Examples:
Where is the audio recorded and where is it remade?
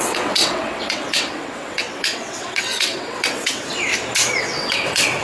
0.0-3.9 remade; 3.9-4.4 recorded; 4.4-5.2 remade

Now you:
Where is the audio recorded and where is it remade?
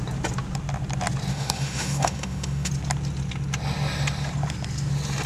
0.0-1.3 recorded; 1.3-2.7 remade; 2.7-5.3 recorded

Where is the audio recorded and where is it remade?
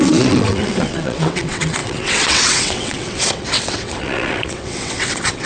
0.0-5.5 remade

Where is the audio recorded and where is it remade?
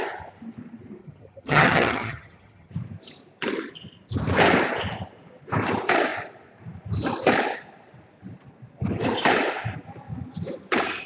0.0-1.0 recorded; 1.0-2.7 remade; 2.7-11.1 recorded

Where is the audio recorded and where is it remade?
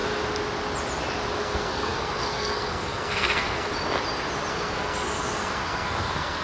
0.0-1.4 recorded; 1.4-3.7 remade; 3.7-4.5 recorded; 4.5-6.4 remade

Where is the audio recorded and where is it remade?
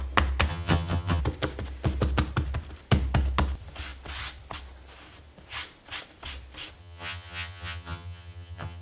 0.0-0.5 recorded; 0.5-1.2 remade; 1.2-6.8 recorded; 6.8-8.8 remade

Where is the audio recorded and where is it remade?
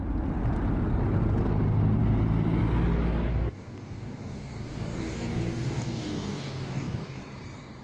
0.0-3.3 recorded; 3.3-7.2 remade; 7.2-7.8 recorded